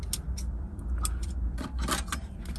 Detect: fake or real real